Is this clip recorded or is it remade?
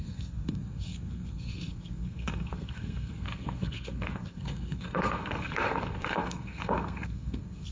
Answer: remade